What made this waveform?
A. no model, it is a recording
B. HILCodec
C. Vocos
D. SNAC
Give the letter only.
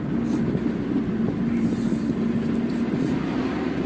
A